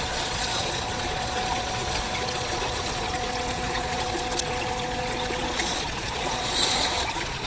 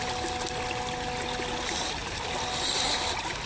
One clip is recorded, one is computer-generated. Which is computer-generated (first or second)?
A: first